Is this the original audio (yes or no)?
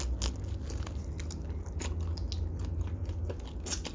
yes